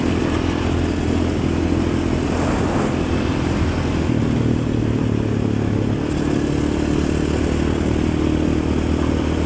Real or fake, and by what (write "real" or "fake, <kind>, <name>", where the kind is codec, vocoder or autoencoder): real